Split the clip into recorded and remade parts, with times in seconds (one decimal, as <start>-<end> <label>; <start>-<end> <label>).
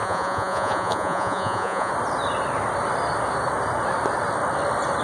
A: 0.0-1.9 remade; 1.9-5.0 recorded